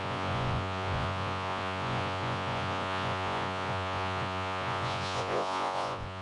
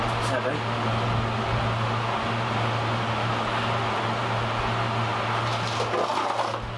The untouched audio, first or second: second